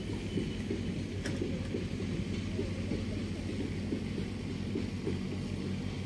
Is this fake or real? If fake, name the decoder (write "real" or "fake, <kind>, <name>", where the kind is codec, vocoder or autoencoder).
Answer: real